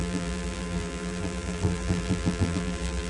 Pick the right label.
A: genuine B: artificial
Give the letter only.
B